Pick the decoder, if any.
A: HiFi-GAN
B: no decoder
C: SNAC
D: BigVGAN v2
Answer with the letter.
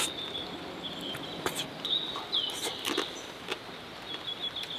B